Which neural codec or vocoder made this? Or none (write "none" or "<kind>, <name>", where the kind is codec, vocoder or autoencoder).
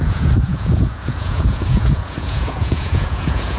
vocoder, Vocos